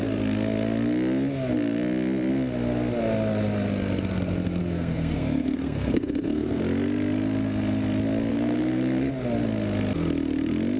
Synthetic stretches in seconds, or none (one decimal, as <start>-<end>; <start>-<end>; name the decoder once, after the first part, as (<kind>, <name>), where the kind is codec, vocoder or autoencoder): 4.6-6.6 (codec, SNAC); 8.3-9.1